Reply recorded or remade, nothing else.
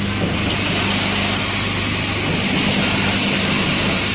recorded